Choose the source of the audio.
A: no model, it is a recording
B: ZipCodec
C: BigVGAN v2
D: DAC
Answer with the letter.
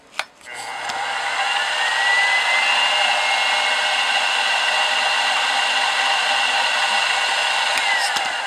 A